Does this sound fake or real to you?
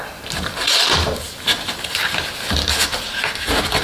real